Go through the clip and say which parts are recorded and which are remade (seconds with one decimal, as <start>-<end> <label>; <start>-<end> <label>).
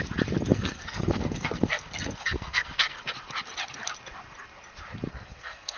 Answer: 0.0-0.5 recorded; 0.5-3.1 remade; 3.1-5.1 recorded; 5.1-5.8 remade